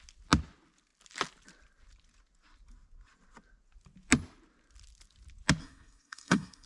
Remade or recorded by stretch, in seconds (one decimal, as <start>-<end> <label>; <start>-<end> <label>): 0.0-5.6 recorded; 5.6-6.7 remade